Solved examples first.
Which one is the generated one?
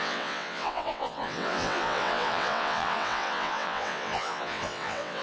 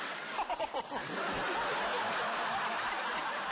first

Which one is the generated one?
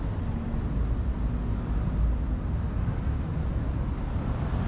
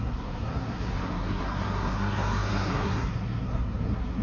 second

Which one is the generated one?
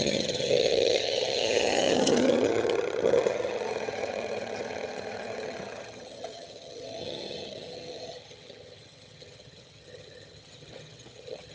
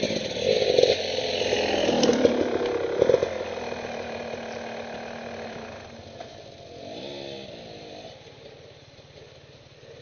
first